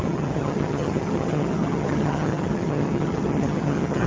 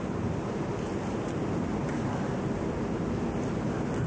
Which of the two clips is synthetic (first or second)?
first